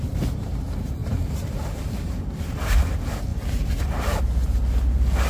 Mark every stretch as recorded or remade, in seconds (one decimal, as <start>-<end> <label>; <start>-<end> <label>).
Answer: 0.0-1.0 recorded; 1.0-2.7 remade; 2.7-3.3 recorded; 3.3-4.2 remade; 4.2-5.3 recorded